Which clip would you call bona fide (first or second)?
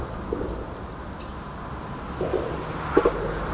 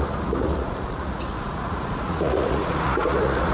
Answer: first